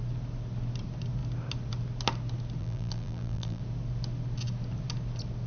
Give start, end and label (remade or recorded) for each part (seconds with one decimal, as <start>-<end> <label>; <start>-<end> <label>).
0.0-2.6 recorded; 2.6-3.6 remade; 3.6-5.5 recorded